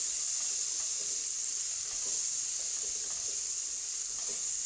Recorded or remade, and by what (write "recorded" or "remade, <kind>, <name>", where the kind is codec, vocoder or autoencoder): recorded